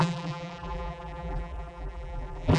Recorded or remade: remade